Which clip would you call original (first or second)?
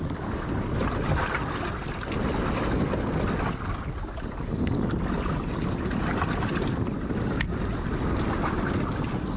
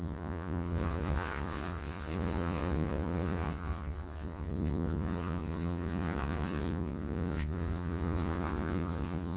first